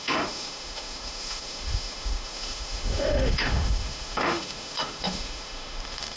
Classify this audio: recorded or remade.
remade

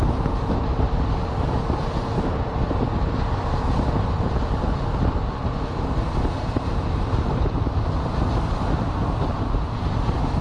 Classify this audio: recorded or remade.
recorded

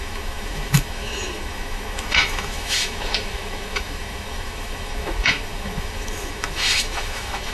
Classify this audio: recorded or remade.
remade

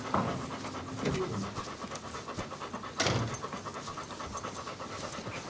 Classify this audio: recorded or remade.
recorded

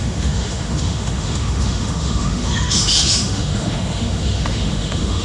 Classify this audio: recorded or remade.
remade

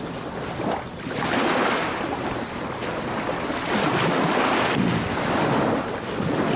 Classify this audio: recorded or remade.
recorded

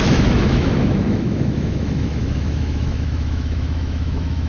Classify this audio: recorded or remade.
remade